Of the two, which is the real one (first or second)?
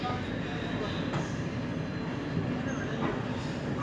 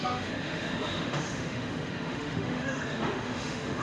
first